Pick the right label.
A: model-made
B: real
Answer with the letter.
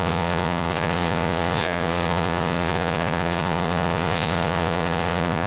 A